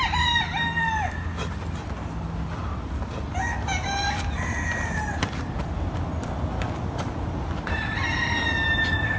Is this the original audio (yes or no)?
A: yes